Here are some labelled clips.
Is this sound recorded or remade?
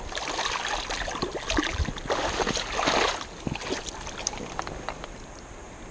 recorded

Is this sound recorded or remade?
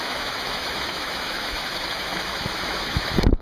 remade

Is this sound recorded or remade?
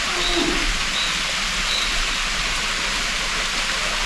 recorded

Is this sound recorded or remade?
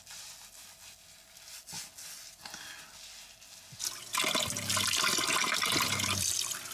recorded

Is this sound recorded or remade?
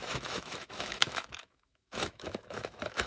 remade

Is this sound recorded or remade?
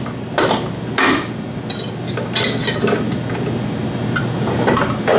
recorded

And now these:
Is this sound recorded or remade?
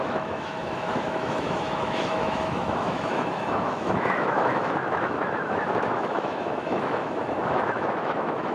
remade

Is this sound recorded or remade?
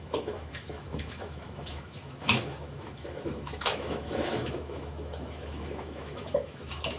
remade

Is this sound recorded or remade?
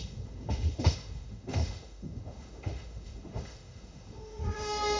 remade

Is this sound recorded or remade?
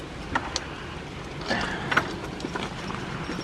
recorded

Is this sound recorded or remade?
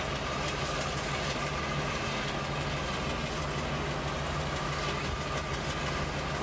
recorded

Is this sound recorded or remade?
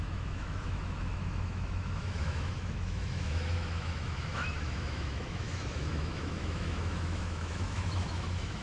remade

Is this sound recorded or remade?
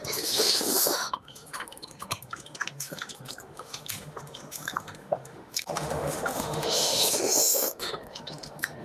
remade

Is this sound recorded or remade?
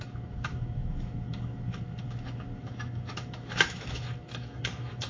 remade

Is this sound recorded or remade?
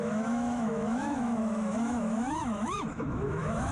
remade